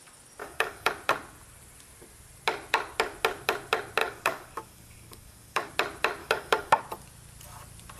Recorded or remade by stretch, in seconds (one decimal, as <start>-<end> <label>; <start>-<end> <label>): 0.0-0.4 recorded; 0.4-0.9 remade; 0.9-4.0 recorded; 4.0-5.7 remade; 5.7-6.2 recorded; 6.2-6.8 remade; 6.8-8.0 recorded